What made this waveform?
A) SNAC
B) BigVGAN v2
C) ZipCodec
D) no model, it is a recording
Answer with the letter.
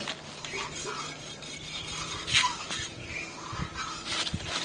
D